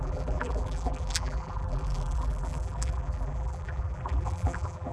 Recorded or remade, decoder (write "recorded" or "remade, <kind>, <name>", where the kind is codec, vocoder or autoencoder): remade, vocoder, BigVGAN v2